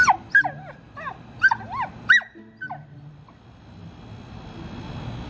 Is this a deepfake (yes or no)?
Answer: no